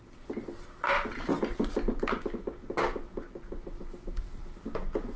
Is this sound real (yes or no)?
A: yes